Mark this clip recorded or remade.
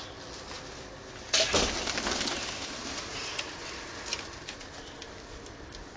recorded